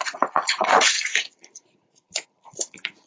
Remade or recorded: remade